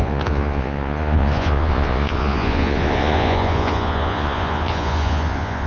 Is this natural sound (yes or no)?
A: no